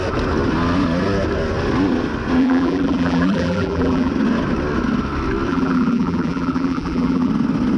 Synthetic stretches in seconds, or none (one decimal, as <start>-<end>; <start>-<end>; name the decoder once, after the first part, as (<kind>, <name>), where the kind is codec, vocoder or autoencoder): 2.4-4.1 (vocoder, BigVGAN v2); 5.5-7.3

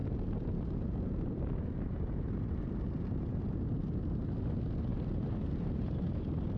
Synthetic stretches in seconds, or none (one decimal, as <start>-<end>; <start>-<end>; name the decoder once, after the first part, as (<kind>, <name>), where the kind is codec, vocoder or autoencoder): 0.0-4.0 (vocoder, BigVGAN v2); 4.9-6.1

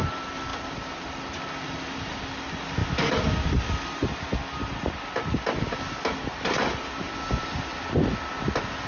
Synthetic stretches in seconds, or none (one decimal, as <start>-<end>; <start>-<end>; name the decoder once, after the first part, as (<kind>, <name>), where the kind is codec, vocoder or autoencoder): none